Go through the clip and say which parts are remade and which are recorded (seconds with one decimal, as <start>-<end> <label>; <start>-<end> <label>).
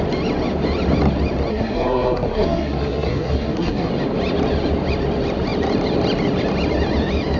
0.0-1.5 recorded; 1.5-3.9 remade; 3.9-7.4 recorded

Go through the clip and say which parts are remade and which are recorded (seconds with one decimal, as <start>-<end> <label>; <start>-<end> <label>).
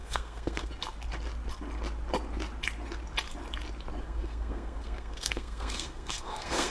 0.0-0.7 remade; 0.7-4.0 recorded; 4.0-6.7 remade